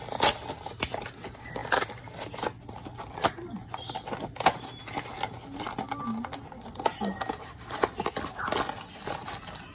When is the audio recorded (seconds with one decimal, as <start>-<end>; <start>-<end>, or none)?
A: 0.0-9.7